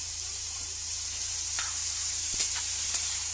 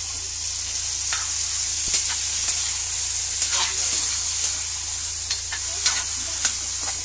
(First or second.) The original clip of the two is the second